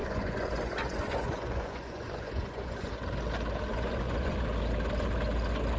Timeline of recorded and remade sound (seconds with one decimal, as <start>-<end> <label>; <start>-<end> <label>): 0.0-2.9 remade; 2.9-3.7 recorded; 3.7-4.4 remade; 4.4-5.8 recorded